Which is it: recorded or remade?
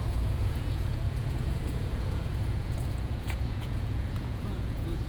remade